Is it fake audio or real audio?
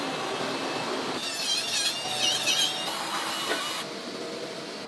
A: real